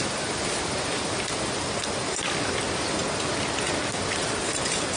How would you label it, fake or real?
real